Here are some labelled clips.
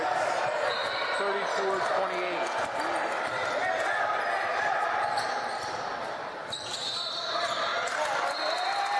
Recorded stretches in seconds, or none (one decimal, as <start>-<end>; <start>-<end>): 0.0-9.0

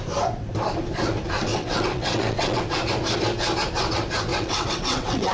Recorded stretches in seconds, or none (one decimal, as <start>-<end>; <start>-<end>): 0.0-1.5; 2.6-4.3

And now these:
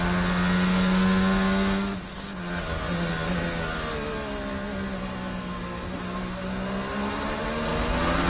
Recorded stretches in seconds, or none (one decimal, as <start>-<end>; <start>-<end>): 0.0-8.3

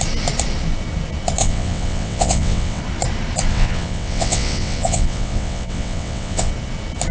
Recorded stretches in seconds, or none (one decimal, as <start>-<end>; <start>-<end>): 0.0-1.4; 2.8-3.5; 6.5-7.1